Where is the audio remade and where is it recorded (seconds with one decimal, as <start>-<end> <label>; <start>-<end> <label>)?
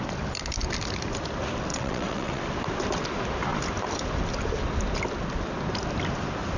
0.0-1.7 recorded; 1.7-2.4 remade; 2.4-6.6 recorded